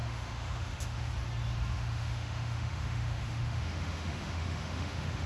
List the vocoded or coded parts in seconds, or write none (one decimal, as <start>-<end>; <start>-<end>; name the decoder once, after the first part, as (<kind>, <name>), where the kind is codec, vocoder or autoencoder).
0.0-1.1 (autoencoder, DAC-VAE); 1.7-5.3